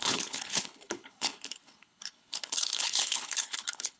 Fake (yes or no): yes